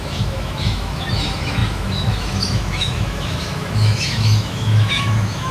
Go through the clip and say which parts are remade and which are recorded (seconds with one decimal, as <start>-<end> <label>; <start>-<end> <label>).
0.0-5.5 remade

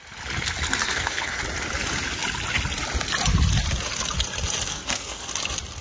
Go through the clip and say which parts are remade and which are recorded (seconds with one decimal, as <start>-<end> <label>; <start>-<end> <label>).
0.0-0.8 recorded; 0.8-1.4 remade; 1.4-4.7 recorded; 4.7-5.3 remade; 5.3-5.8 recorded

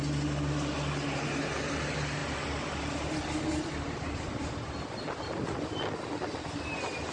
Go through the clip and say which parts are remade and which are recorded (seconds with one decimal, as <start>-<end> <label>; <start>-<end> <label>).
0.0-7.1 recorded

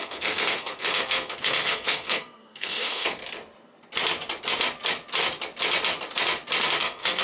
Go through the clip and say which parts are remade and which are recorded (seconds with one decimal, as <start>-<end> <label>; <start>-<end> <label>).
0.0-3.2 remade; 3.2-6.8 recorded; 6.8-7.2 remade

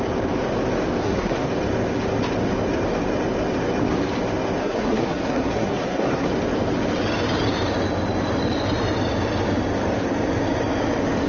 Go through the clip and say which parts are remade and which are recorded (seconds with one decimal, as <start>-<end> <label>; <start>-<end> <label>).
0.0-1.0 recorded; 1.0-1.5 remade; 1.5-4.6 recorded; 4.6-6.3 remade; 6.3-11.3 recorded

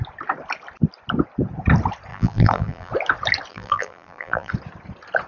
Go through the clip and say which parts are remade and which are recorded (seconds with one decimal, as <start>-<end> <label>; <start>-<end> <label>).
0.0-2.1 recorded; 2.1-2.9 remade; 2.9-3.5 recorded; 3.5-4.5 remade; 4.5-5.3 recorded

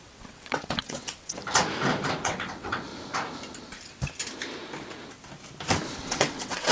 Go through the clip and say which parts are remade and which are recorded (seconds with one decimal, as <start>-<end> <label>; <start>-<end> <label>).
0.0-1.4 remade; 1.4-2.2 recorded; 2.2-2.9 remade; 2.9-6.0 recorded; 6.0-6.7 remade

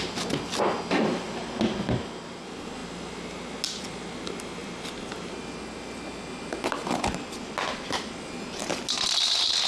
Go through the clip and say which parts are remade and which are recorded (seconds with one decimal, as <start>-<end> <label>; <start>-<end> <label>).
0.0-9.7 recorded